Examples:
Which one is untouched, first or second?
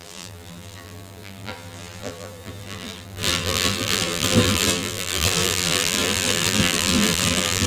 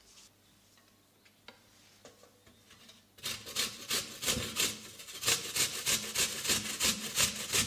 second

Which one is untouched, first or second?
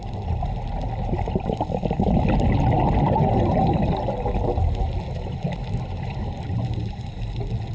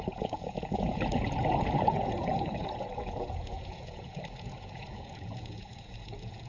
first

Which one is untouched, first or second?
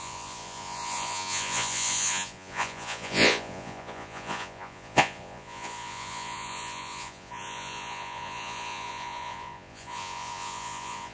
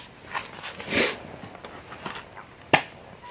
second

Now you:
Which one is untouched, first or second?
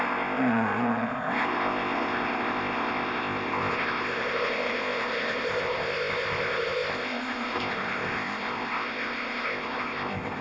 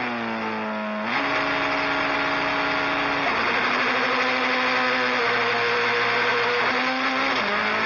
second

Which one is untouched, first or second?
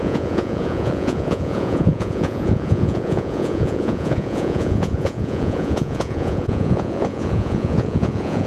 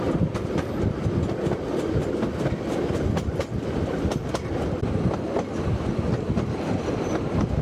second